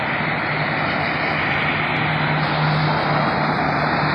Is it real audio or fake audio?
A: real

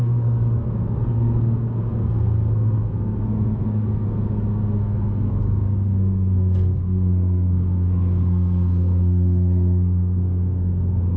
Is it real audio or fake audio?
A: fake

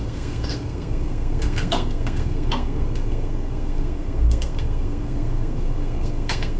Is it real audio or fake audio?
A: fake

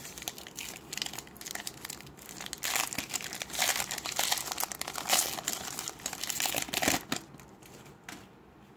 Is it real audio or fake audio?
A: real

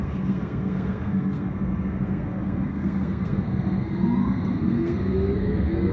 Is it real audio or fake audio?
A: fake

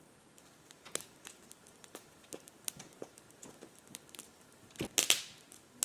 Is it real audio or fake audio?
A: real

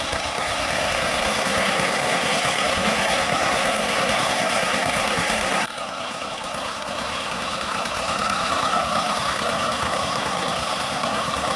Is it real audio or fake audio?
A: fake